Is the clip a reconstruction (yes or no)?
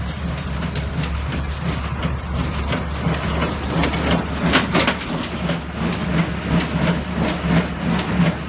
no